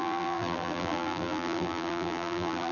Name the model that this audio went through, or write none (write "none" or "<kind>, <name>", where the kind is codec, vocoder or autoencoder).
vocoder, BigVGAN v2